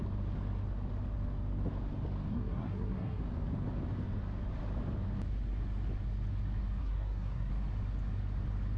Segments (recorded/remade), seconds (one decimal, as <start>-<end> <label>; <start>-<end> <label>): 0.0-2.3 recorded; 2.3-3.2 remade; 3.2-6.8 recorded; 6.8-7.5 remade; 7.5-8.8 recorded